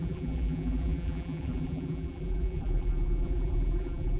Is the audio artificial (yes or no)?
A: yes